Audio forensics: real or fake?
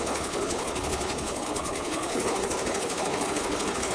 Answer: fake